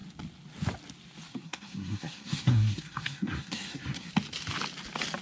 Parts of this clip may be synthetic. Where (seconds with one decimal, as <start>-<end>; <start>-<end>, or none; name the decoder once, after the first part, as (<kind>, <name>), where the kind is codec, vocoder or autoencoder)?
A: 1.3-4.1 (codec, SNAC)